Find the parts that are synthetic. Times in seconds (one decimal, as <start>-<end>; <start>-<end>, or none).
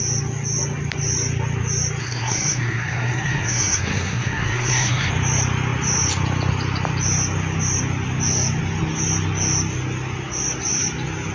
2.0-5.1